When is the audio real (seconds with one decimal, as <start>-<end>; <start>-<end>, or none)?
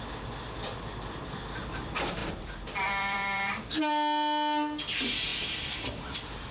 0.0-2.2; 3.7-6.5